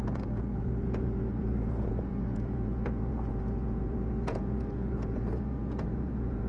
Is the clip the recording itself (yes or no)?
no